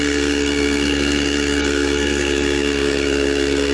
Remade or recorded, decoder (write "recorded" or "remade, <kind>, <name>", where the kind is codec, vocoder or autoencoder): remade, codec, SNAC